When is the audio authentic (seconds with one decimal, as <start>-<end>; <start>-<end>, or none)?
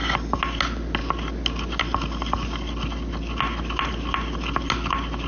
0.0-5.3